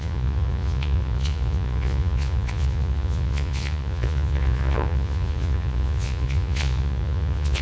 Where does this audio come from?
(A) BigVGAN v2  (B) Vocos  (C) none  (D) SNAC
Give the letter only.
B